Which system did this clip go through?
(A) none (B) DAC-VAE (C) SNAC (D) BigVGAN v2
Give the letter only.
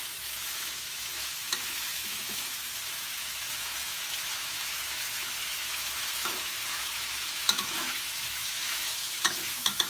B